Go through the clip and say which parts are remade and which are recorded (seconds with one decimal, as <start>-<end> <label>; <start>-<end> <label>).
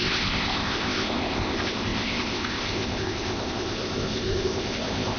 0.0-5.2 remade